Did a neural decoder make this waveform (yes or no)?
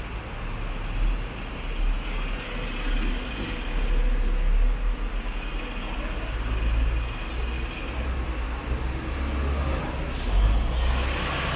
no